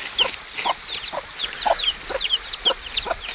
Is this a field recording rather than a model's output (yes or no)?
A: yes